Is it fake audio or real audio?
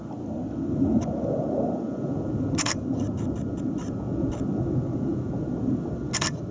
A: real